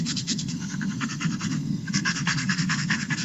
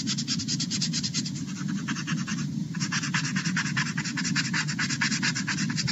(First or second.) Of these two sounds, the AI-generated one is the first